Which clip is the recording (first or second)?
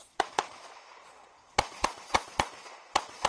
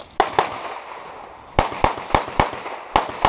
second